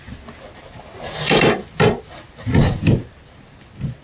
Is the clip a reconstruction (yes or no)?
no